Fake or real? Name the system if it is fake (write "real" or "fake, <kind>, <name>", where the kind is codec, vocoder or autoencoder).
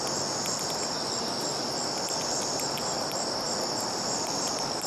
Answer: real